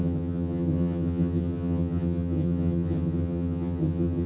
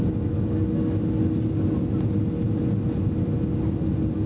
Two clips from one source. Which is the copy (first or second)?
first